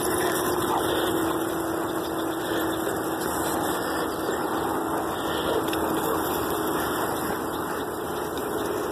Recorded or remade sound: recorded